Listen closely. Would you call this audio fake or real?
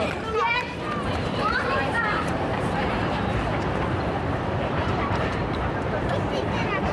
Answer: fake